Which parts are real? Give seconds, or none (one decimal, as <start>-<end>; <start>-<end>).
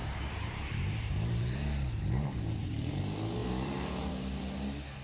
3.0-3.4; 4.1-5.0